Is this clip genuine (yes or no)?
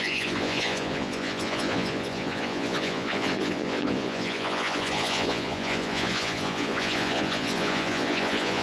no